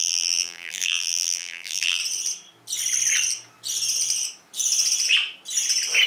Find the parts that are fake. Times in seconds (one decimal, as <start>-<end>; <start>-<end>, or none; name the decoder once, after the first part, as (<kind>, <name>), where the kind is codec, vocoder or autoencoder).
0.0-2.0 (vocoder, BigVGAN v2)